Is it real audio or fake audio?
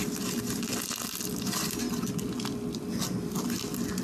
real